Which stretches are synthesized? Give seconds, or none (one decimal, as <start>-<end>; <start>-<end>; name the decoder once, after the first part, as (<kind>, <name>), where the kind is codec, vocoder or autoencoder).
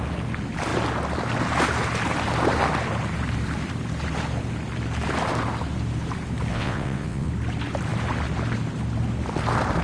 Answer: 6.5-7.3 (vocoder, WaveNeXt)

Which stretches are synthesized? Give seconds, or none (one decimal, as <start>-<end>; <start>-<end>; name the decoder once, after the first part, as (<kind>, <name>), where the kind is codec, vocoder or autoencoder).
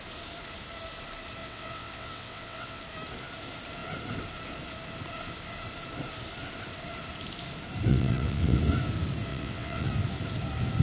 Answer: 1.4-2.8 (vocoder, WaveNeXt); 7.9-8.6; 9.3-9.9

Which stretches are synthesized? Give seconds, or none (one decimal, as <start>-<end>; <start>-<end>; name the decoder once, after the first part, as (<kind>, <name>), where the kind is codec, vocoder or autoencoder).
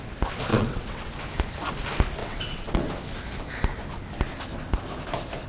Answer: 0.5-1.1 (vocoder, WaveNeXt); 2.2-2.9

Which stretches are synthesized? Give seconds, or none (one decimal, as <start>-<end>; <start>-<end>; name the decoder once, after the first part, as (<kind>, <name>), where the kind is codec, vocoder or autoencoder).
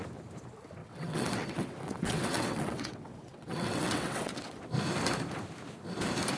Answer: 0.8-4.6 (vocoder, WaveNeXt)